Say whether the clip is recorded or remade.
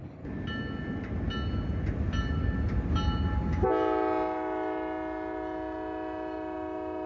recorded